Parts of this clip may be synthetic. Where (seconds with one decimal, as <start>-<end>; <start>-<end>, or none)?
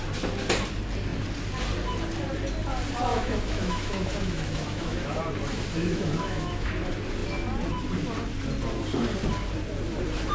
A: 3.1-5.2; 5.8-6.7